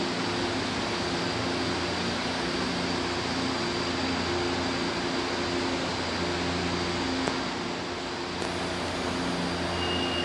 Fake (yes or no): no